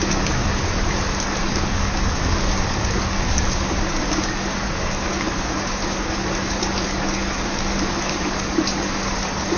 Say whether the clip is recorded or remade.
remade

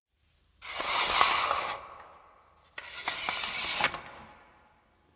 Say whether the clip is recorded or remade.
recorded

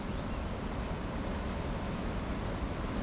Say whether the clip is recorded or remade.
recorded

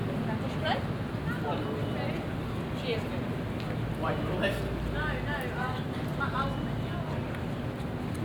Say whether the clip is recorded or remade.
recorded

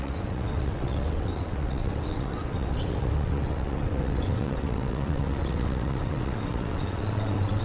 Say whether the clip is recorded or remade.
remade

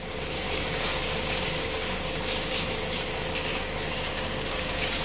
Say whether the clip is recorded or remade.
remade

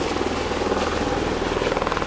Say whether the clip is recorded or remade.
recorded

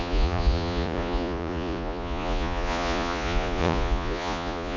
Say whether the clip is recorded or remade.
remade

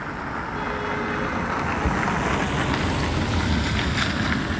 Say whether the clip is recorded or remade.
recorded